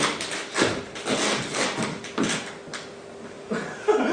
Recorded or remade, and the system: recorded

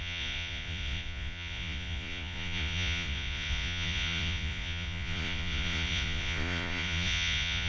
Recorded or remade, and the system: remade, vocoder, Vocos